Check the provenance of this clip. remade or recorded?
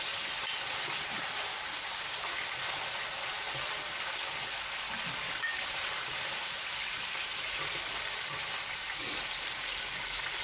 recorded